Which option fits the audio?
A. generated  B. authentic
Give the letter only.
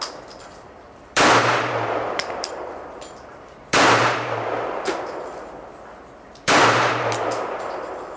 A